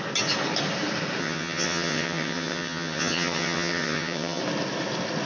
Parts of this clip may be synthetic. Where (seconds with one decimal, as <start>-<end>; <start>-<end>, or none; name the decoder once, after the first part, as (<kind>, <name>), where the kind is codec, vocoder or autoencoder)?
1.2-4.4 (vocoder, HiFi-GAN)

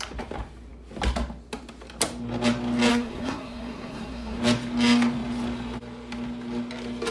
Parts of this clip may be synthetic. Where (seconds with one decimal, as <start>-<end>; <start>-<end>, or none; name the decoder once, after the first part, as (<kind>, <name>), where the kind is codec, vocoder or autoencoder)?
2.9-4.4 (codec, SNAC)